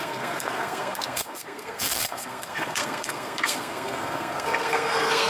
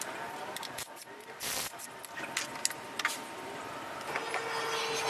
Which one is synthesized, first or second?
first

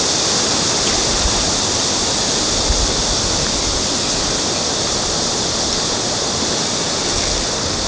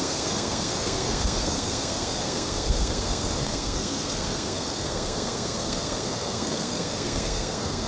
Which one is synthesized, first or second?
second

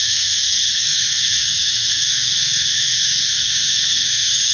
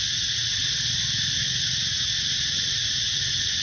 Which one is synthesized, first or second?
first